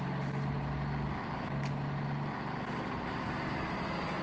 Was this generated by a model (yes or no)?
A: no